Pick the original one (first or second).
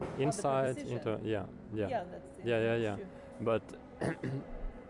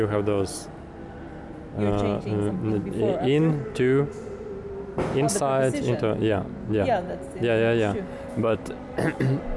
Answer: second